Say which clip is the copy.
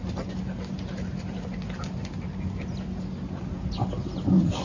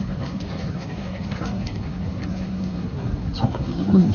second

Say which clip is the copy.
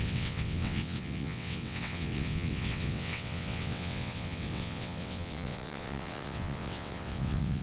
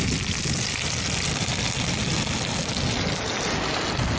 first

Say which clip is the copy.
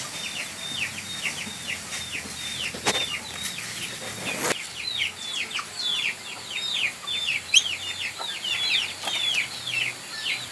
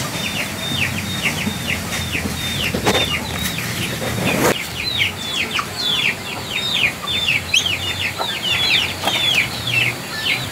second